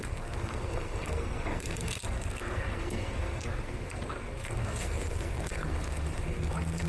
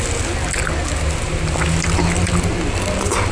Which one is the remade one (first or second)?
first